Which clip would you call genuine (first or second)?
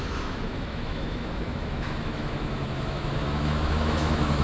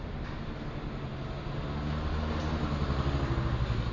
second